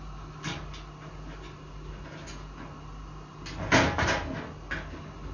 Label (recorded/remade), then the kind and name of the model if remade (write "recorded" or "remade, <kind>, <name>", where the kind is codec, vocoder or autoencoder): recorded